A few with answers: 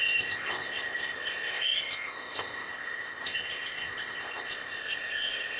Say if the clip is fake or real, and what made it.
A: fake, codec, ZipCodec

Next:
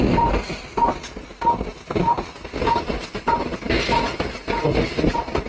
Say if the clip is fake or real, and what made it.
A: real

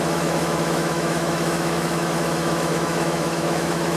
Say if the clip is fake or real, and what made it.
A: fake, autoencoder, DAC-VAE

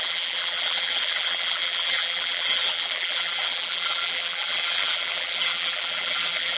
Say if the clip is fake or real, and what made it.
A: fake, vocoder, BigVGAN v2